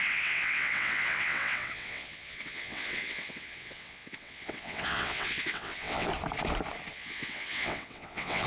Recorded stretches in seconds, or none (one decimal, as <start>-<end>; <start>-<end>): 6.1-6.9